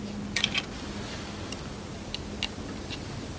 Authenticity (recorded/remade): recorded